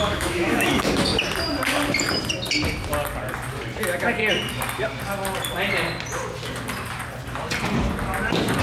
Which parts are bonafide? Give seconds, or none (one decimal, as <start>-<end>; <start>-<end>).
1.1-3.8; 4.2-8.6